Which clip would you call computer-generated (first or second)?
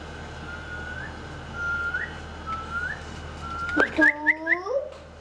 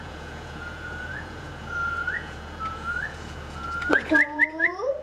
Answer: second